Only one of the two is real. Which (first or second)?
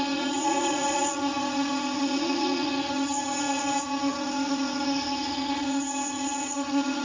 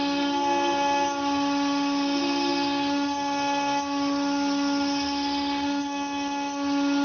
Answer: second